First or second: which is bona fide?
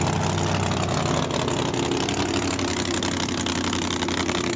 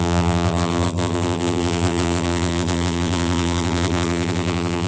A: first